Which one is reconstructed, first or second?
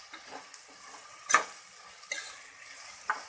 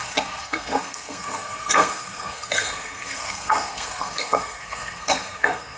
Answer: second